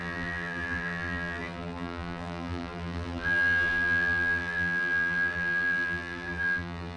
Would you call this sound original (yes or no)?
no